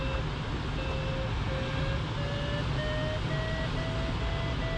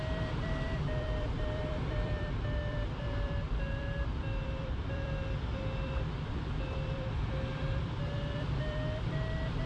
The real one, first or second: first